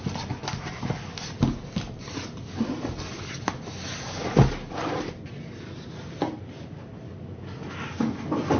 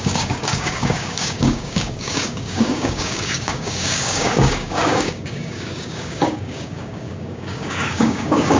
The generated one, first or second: second